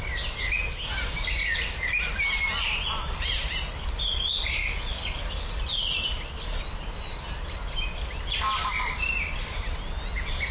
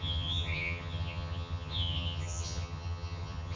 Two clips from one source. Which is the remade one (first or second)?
second